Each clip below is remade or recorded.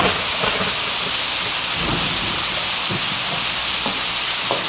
recorded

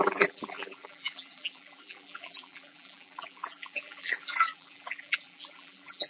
remade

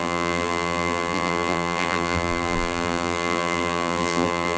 remade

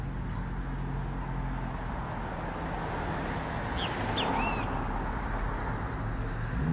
recorded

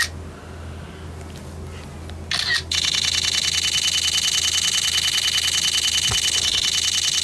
recorded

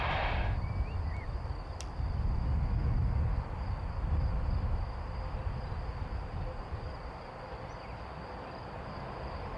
recorded